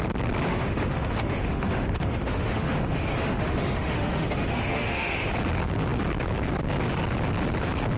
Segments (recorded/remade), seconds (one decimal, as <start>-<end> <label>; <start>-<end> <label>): 0.0-0.5 recorded; 0.5-5.3 remade; 5.3-8.0 recorded